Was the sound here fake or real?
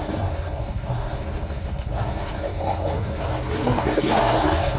fake